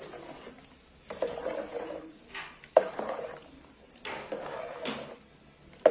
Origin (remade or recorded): recorded